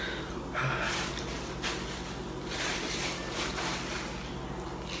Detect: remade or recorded recorded